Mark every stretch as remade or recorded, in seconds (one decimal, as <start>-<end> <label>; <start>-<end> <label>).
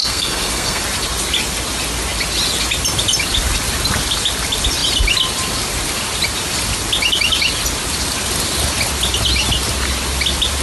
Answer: 0.0-0.8 remade; 0.8-10.6 recorded